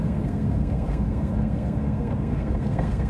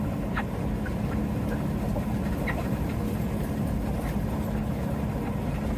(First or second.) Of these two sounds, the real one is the second